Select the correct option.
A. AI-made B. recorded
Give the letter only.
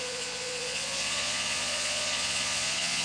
A